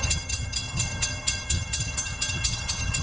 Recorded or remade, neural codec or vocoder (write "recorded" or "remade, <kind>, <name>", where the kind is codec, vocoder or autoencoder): remade, vocoder, HiFi-GAN